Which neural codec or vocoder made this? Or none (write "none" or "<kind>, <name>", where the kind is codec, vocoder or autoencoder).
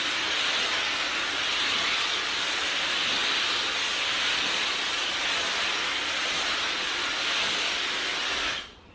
none